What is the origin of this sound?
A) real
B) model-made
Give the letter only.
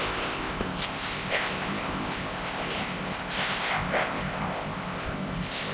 B